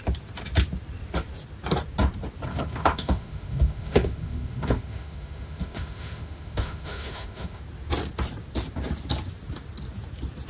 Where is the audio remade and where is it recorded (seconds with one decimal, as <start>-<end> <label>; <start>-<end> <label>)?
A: 0.0-2.5 recorded; 2.5-7.6 remade; 7.6-10.5 recorded